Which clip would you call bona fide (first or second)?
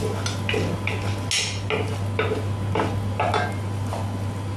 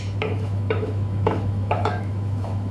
first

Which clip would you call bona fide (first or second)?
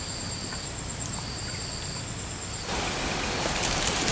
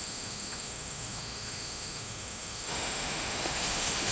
first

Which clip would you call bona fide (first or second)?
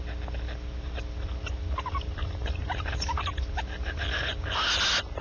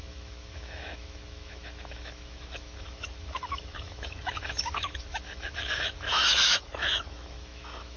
first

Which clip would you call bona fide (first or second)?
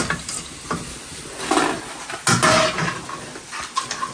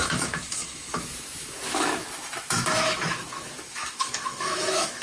first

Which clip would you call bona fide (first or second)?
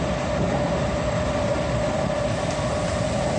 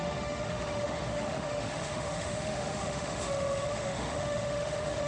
first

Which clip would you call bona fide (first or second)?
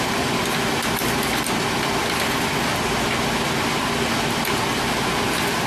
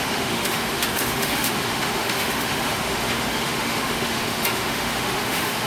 first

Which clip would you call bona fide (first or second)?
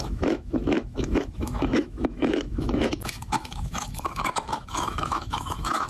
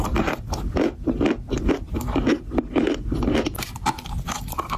second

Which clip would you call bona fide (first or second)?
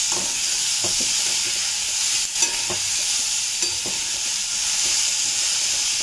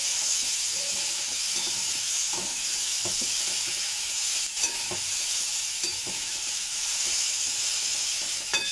first